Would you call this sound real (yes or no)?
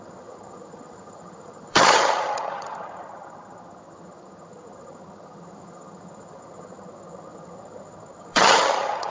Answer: no